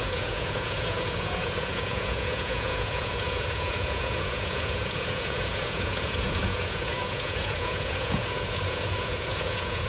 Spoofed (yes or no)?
yes